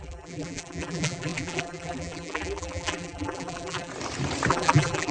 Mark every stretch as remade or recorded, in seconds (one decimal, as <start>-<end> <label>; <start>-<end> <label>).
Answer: 0.0-3.9 remade; 3.9-4.5 recorded; 4.5-5.1 remade